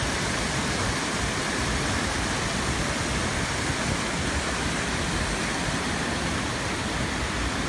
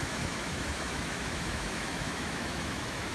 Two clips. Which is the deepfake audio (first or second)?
second